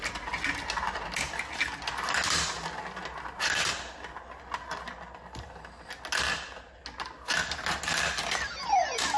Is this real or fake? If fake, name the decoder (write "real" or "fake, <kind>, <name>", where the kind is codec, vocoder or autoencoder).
real